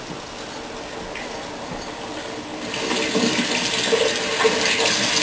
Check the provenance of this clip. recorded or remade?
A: recorded